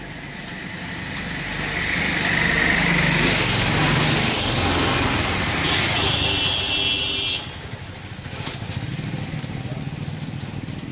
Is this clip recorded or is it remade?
recorded